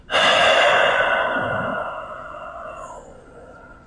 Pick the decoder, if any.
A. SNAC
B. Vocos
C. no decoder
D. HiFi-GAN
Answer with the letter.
B